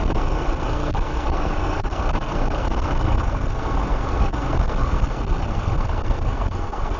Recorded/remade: remade